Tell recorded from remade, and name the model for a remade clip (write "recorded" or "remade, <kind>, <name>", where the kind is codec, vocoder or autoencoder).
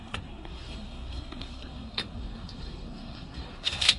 remade, codec, SNAC